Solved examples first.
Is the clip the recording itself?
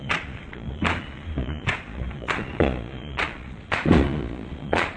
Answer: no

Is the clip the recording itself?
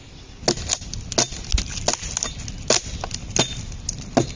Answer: yes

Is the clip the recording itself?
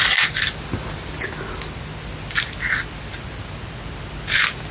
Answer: yes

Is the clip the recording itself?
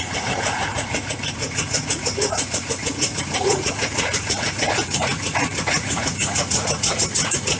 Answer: no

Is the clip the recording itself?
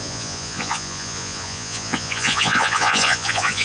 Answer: no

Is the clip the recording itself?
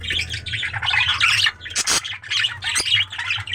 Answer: yes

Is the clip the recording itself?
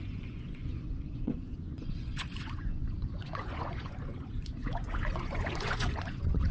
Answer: no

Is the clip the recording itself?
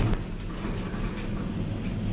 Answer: yes